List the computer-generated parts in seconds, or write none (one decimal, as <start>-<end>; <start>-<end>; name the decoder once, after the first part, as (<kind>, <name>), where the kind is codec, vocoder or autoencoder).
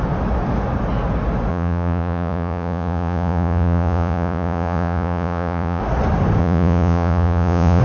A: 1.5-5.8 (vocoder, Vocos); 6.4-7.8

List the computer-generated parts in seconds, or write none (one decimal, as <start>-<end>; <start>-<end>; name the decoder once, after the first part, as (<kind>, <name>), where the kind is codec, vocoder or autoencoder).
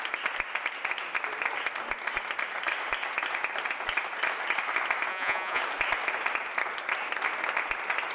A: 5.1-5.6 (vocoder, Vocos)